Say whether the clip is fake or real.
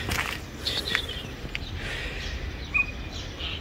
real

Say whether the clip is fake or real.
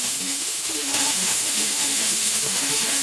fake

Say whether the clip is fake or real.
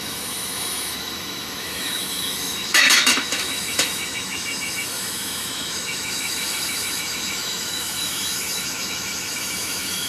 fake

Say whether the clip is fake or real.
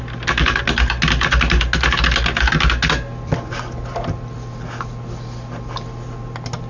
real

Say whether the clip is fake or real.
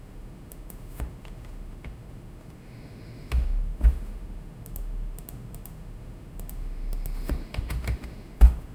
fake